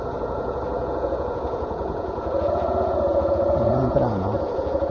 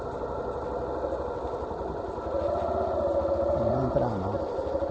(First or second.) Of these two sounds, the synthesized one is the first